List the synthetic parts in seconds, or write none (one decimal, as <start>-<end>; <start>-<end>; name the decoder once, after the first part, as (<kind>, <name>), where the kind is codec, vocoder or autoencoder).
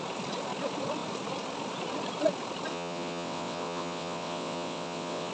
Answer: 2.7-5.3 (vocoder, WaveNeXt)